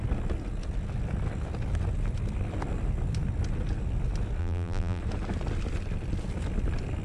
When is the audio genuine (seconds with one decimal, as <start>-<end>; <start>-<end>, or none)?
0.0-4.4; 5.0-7.0